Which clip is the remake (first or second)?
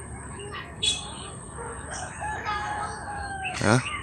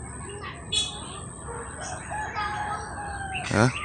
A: first